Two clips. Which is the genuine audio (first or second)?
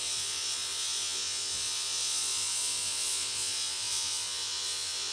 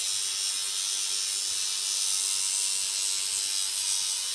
second